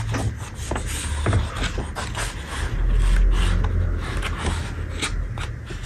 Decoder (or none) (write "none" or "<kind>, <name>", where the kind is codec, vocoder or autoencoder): none